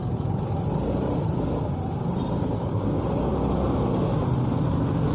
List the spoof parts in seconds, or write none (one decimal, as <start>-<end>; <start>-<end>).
2.6-3.3